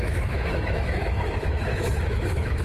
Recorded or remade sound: remade